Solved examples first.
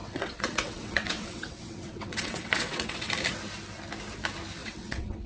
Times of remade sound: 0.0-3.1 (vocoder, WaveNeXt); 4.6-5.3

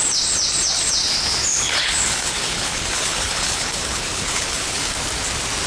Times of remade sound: 1.5-4.9 (codec, HILCodec)

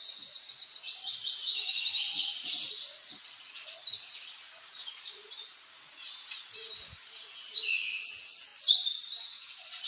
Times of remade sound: 0.0-9.9 (vocoder, Vocos)